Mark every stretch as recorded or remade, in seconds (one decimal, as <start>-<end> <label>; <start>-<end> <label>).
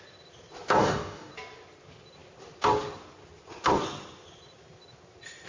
0.0-0.8 recorded; 0.8-1.3 remade; 1.3-5.5 recorded